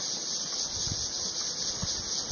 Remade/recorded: recorded